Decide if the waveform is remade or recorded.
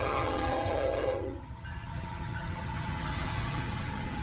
remade